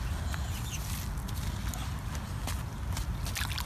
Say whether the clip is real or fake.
real